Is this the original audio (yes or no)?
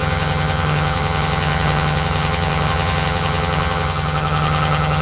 no